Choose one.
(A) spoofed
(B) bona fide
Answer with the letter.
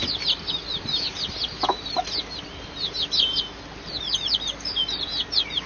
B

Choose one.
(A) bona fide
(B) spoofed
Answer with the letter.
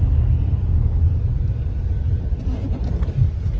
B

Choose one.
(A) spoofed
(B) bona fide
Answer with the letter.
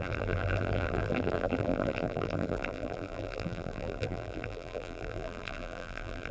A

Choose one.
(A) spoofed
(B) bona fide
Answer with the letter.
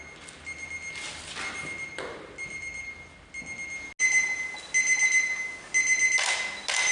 B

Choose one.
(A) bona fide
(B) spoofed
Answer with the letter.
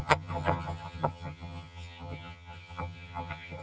B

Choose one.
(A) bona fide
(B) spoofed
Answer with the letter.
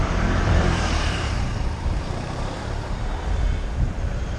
B